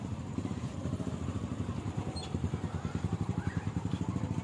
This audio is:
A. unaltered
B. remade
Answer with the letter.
B